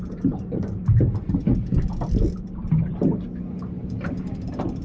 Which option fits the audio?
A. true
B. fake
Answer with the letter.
A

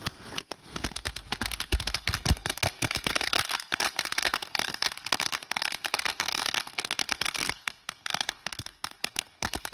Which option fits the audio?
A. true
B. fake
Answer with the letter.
B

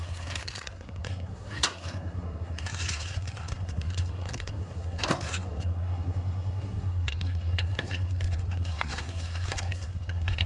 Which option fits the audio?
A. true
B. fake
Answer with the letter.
B